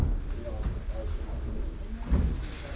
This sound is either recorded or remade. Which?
recorded